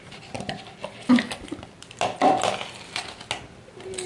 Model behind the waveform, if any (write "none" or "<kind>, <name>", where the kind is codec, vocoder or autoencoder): none